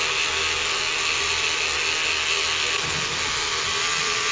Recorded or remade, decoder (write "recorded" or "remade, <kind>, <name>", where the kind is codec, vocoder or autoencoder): recorded